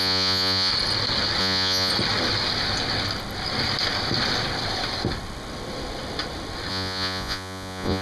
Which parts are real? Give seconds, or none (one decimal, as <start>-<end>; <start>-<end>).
0.7-1.4; 1.9-6.7